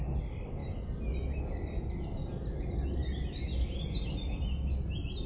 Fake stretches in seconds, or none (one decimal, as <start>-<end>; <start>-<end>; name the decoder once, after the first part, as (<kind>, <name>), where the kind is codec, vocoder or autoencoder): none